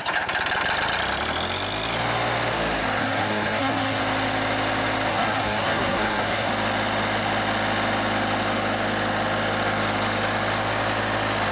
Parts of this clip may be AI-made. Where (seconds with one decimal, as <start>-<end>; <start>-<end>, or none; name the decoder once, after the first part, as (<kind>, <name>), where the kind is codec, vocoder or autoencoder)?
3.0-4.0 (codec, SNAC); 5.1-6.5